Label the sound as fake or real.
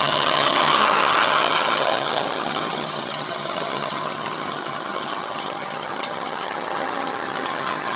fake